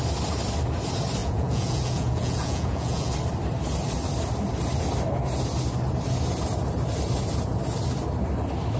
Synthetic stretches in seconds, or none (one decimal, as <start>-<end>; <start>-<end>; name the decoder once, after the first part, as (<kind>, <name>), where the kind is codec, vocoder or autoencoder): 1.2-3.1 (vocoder, Vocos)